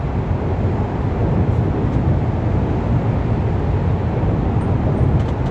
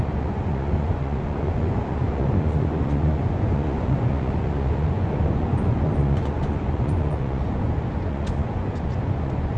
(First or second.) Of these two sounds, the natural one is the first